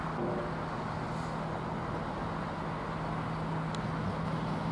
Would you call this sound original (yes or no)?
yes